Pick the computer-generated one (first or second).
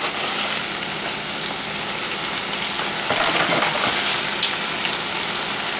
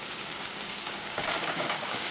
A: second